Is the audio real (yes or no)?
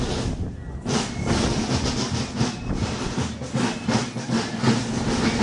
yes